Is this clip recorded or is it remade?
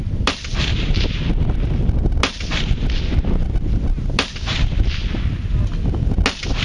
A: recorded